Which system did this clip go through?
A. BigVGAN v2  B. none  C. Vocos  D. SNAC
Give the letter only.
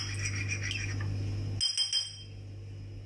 B